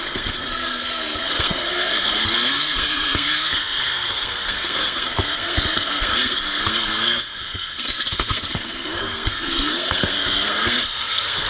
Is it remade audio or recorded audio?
remade